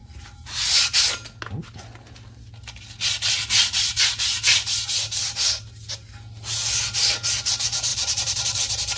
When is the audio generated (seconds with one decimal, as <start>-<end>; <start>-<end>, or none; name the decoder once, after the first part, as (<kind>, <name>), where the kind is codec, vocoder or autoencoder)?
0.0-0.8 (vocoder, BigVGAN v2); 7.9-8.6